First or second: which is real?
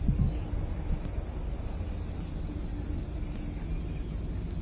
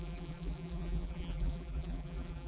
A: first